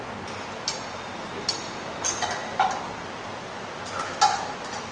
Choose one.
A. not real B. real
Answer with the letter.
B